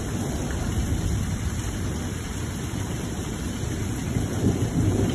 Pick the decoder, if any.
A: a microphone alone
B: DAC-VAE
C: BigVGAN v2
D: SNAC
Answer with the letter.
C